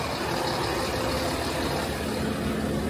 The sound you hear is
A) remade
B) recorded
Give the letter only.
B